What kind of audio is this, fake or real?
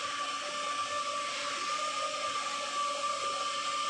real